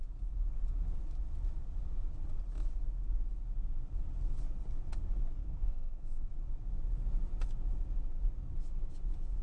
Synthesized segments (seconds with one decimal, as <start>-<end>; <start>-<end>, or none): 5.4-6.3